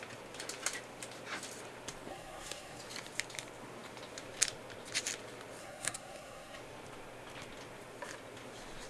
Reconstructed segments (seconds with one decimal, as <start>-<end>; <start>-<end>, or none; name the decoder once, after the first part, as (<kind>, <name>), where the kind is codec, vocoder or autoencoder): 2.1-2.8 (codec, SNAC); 5.6-6.6